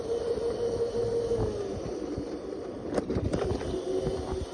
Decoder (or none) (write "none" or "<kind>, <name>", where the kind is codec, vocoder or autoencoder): none